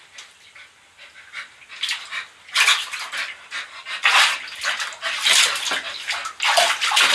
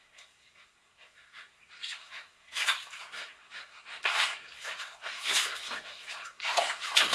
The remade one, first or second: second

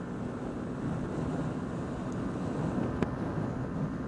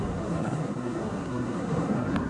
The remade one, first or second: second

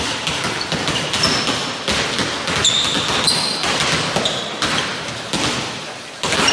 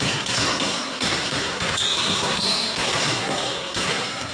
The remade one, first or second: second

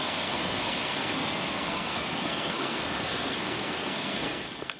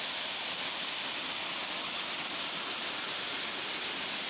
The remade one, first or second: first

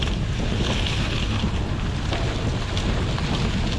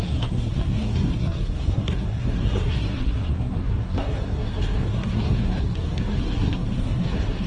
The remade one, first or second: second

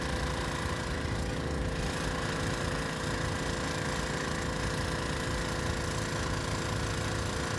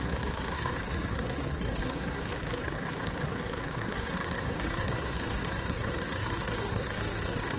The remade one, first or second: second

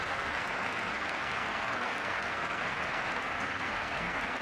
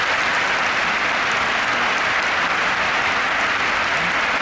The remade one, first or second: first